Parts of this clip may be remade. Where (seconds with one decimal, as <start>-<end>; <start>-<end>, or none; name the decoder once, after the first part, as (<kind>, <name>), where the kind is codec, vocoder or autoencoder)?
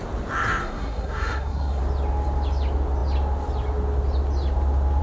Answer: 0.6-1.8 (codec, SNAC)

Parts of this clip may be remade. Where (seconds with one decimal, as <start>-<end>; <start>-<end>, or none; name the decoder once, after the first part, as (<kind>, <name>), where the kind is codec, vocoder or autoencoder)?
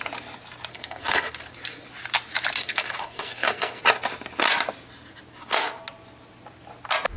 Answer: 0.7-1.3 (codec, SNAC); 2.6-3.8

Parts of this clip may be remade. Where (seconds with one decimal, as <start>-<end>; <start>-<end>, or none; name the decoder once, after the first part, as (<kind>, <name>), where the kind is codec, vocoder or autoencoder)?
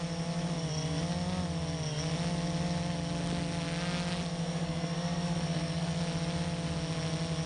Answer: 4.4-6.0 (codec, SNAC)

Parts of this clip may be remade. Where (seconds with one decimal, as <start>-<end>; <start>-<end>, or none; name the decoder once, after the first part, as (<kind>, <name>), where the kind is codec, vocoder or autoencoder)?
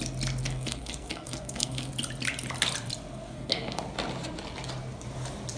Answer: 0.4-1.9 (codec, SNAC); 3.1-3.8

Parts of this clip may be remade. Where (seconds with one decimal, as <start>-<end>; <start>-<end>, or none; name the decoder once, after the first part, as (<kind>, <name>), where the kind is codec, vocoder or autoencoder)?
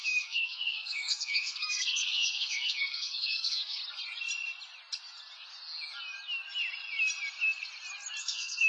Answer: 0.0-3.8 (codec, SNAC); 8.2-8.7